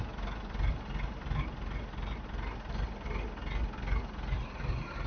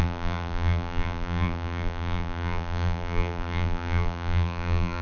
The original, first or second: first